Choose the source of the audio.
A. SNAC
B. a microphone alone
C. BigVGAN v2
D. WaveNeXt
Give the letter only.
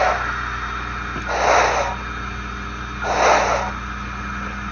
B